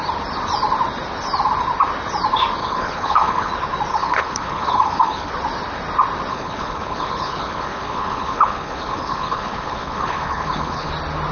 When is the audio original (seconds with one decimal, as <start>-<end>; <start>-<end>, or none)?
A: 0.0-2.6; 3.5-3.9; 5.3-6.3; 10.9-11.3